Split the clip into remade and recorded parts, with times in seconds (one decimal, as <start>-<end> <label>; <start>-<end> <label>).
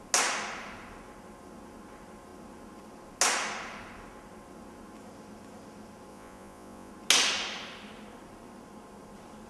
0.0-6.1 recorded; 6.1-6.9 remade; 6.9-9.5 recorded